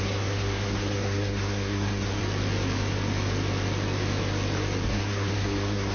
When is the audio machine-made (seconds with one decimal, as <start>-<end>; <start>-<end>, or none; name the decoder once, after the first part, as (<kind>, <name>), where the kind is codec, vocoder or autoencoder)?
0.0-2.2 (codec, SNAC); 4.9-5.9